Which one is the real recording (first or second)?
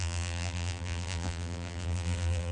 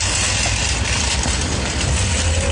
second